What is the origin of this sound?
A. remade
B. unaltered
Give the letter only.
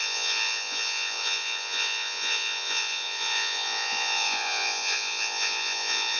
A